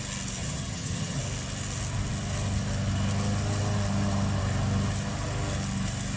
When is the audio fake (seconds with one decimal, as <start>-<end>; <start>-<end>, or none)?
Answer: 0.4-1.2